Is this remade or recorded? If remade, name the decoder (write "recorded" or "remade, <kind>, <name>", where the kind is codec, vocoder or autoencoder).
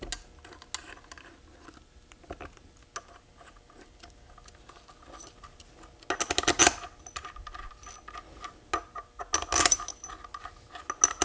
recorded